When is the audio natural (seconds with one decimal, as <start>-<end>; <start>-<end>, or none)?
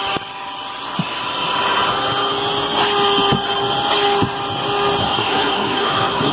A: 0.0-5.0